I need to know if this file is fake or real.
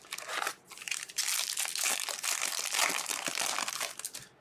real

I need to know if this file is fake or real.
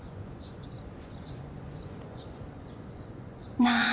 fake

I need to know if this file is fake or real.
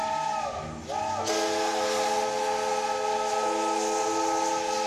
real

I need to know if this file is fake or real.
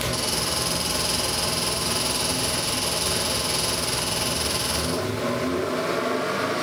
real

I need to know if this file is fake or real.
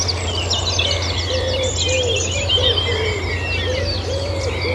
real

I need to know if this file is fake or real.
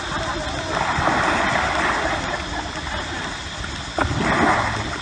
real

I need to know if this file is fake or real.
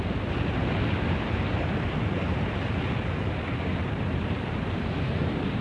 real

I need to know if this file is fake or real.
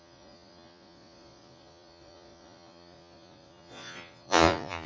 fake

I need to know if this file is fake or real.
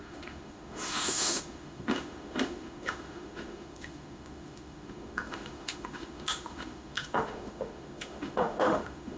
fake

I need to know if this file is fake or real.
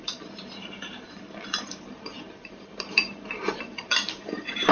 fake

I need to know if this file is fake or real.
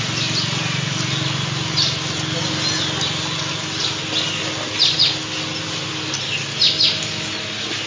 real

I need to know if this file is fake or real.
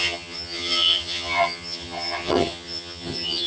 fake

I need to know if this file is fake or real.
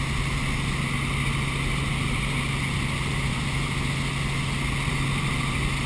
real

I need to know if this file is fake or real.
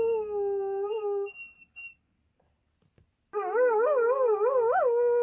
real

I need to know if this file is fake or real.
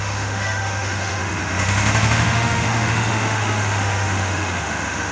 fake